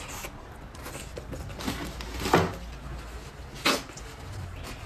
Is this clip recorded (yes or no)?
yes